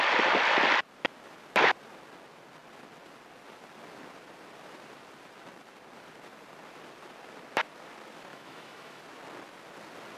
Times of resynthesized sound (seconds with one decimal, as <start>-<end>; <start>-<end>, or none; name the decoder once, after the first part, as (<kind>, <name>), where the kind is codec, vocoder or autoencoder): 8.3-9.0 (autoencoder, DAC-VAE)